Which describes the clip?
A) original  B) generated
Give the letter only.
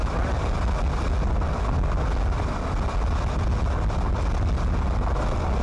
A